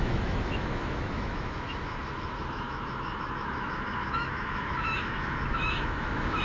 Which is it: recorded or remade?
remade